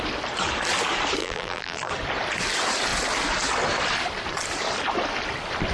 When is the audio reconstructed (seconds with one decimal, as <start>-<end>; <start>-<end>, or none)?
1.2-1.9